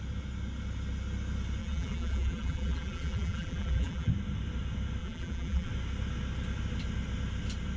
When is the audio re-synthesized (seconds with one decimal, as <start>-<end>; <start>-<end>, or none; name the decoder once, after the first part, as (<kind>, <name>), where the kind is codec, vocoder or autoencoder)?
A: 1.6-4.1 (vocoder, BigVGAN v2); 5.0-5.7